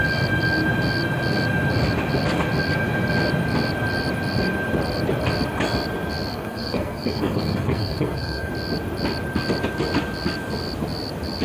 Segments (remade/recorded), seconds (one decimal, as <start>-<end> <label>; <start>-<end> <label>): 0.0-6.3 recorded; 6.3-8.5 remade; 8.5-11.4 recorded